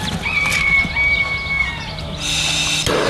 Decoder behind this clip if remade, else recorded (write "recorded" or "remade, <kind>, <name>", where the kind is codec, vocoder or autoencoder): recorded